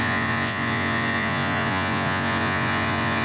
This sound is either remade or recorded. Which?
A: remade